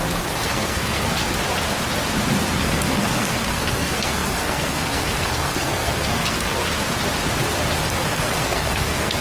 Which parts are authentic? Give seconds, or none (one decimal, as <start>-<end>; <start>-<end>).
1.2-2.6; 6.6-7.9